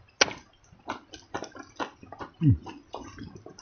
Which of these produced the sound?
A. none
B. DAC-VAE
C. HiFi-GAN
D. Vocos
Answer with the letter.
A